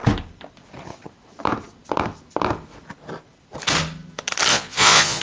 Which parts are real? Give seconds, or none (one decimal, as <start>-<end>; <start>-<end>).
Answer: 0.0-4.5

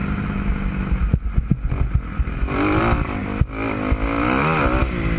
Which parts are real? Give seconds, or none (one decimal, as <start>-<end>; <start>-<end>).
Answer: 0.0-5.2

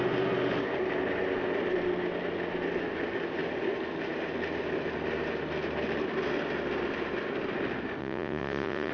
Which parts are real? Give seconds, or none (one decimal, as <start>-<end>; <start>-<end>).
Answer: 0.0-8.0

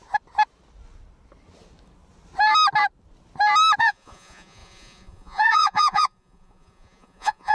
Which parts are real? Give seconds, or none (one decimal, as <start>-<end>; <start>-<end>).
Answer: 0.0-3.8

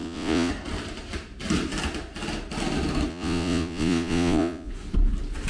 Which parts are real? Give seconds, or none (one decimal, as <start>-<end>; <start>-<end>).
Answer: 0.5-3.1; 4.7-5.5